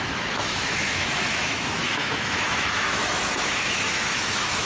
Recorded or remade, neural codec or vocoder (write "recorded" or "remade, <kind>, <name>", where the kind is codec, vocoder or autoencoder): remade, autoencoder, DAC-VAE